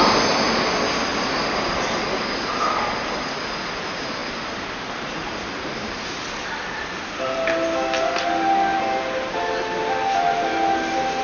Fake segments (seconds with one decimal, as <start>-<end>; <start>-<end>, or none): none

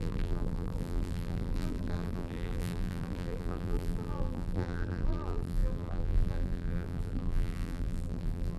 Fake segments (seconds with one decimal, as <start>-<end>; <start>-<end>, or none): 0.0-8.6

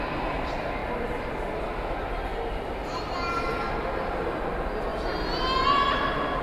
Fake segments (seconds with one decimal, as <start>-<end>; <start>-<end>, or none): none